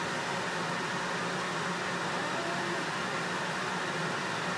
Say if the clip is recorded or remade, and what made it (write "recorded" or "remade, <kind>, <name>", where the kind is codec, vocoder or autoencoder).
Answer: recorded